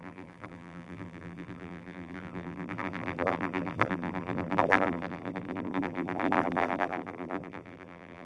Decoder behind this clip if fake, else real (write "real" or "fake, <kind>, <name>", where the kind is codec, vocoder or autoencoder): fake, vocoder, BigVGAN v2